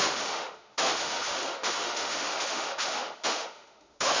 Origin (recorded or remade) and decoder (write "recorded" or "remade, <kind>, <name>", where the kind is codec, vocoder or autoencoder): remade, autoencoder, DAC-VAE